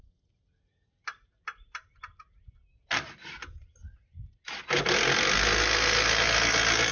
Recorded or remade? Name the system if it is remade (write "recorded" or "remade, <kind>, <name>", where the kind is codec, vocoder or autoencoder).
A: recorded